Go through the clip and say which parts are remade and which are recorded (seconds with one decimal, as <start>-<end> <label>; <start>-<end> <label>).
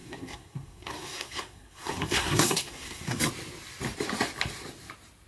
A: 0.0-3.2 remade; 3.2-5.3 recorded